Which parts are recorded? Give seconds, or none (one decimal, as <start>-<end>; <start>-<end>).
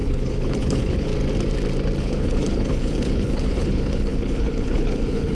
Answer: 1.1-2.0